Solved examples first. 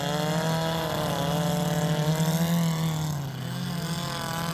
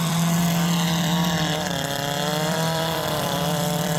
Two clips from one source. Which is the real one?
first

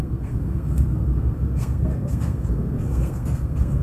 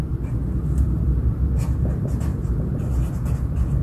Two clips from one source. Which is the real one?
second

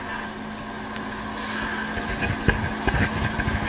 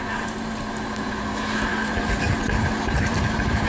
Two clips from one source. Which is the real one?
first